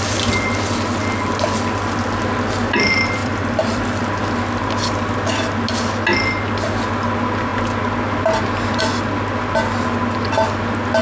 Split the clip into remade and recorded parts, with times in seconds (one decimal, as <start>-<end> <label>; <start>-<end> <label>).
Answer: 0.0-3.2 recorded; 3.2-4.0 remade; 4.0-11.0 recorded